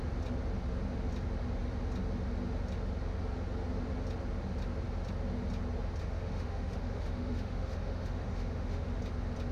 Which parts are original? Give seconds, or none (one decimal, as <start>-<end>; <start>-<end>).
0.0-6.0; 9.0-9.5